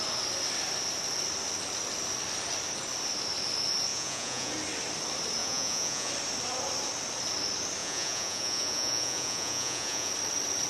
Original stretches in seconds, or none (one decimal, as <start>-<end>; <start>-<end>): 0.0-3.9; 4.5-5.4; 6.1-7.8; 10.1-10.7